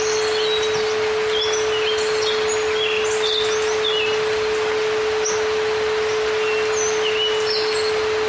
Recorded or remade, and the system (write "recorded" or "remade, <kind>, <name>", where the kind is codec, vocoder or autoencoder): recorded